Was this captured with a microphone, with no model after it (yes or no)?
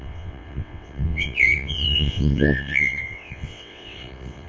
no